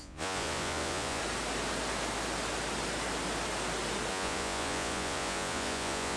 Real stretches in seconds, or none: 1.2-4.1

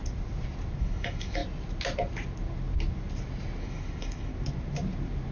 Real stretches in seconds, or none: 0.0-0.8; 1.4-3.6; 4.3-5.3

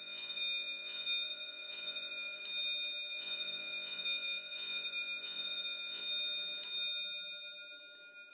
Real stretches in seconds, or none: 2.4-3.1; 6.0-8.3

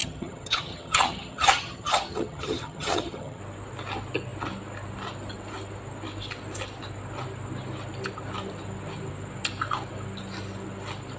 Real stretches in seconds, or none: 3.4-11.2

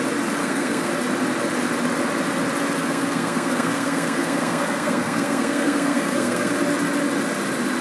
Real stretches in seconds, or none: 0.0-0.4; 0.9-2.8; 6.5-7.8